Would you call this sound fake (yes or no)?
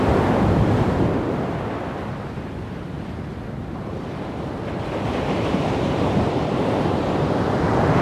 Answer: yes